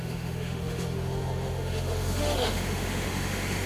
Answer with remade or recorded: remade